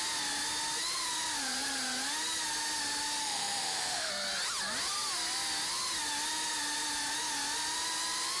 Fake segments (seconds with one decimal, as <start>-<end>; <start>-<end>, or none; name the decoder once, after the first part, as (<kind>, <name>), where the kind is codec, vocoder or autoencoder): 3.2-4.1 (autoencoder, DAC-VAE)